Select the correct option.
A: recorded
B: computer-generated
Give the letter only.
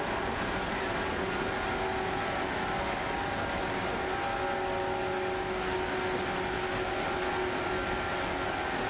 A